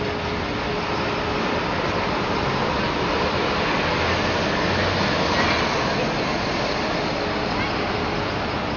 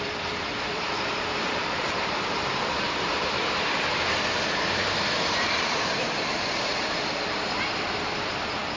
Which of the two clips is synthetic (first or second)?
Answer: second